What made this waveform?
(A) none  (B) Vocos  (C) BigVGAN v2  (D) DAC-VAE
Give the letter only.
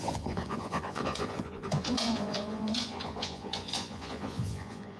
B